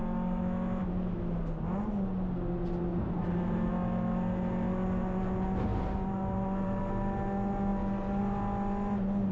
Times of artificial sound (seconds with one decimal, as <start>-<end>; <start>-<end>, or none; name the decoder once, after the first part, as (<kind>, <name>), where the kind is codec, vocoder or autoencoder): 2.9-3.7 (vocoder, BigVGAN v2); 5.7-6.8